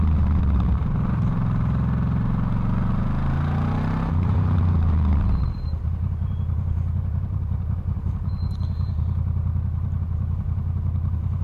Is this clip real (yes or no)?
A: no